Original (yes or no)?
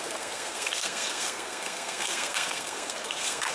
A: no